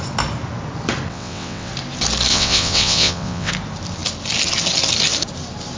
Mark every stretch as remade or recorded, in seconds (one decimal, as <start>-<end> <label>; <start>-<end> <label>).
0.0-1.1 recorded; 1.1-1.7 remade; 1.7-2.3 recorded; 2.3-3.5 remade; 3.5-5.8 recorded

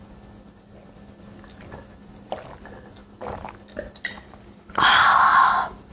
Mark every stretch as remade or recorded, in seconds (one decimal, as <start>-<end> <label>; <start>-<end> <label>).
0.0-5.9 recorded

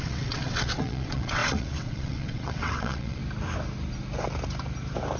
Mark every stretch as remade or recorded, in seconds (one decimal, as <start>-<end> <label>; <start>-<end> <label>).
0.0-3.2 remade; 3.2-5.2 recorded